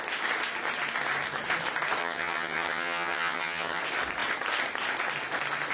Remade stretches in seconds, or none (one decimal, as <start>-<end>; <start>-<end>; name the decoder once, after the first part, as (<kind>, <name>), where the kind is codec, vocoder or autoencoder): 2.0-3.8 (vocoder, HiFi-GAN)